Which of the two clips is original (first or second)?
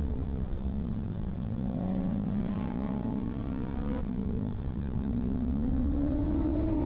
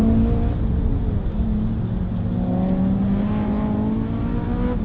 second